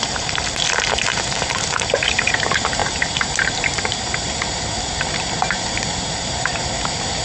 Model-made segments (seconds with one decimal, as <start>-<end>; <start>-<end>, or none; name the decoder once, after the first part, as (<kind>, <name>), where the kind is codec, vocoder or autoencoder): 0.0-7.2 (vocoder, BigVGAN v2)